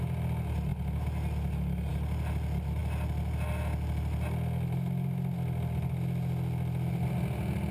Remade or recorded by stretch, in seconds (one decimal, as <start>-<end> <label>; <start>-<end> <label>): 0.0-7.7 recorded